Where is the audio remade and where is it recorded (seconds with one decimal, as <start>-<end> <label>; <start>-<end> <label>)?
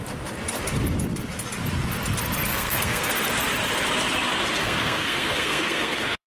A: 0.0-2.5 recorded; 2.5-3.1 remade; 3.1-4.6 recorded; 4.6-6.3 remade